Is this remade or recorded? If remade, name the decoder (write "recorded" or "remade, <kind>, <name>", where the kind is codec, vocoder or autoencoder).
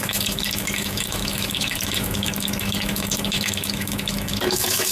remade, autoencoder, DAC-VAE